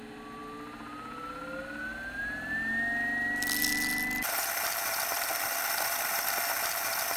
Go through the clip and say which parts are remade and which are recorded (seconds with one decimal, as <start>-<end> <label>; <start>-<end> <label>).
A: 0.0-7.2 recorded